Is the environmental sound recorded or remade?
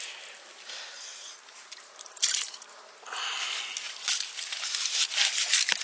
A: recorded